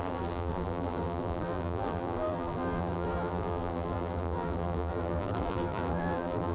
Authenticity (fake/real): fake